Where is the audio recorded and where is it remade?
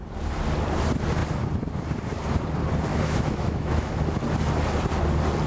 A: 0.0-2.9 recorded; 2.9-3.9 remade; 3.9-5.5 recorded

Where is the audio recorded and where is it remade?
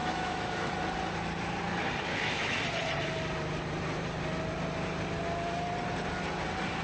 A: 0.0-0.7 remade; 0.7-2.1 recorded; 2.1-2.6 remade; 2.6-6.8 recorded